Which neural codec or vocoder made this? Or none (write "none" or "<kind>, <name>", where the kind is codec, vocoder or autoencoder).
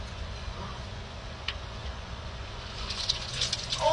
vocoder, Vocos